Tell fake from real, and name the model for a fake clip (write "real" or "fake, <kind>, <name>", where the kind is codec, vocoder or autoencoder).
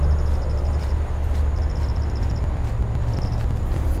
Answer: real